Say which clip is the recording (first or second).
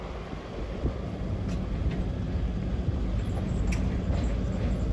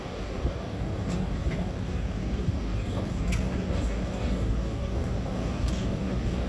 first